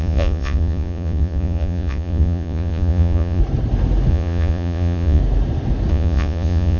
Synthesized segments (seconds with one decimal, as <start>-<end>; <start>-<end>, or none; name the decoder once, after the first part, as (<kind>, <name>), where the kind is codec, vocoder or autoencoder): 0.0-3.4 (vocoder, Vocos); 4.1-5.2; 5.9-6.8